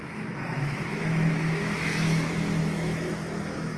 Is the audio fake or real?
fake